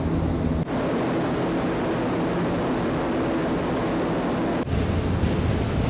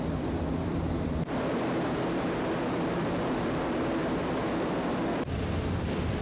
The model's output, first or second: second